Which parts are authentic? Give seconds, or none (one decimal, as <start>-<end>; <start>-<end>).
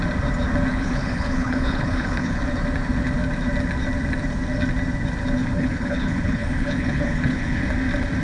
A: 0.0-0.7; 2.4-5.4; 7.6-8.2